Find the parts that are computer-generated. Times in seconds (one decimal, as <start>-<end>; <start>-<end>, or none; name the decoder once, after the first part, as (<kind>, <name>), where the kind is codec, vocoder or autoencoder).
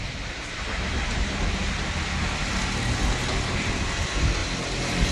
none